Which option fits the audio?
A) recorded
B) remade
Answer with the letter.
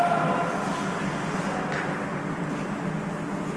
A